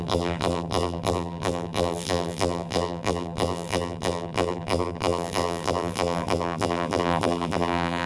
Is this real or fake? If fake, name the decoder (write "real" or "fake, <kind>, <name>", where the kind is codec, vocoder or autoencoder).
fake, vocoder, BigVGAN v2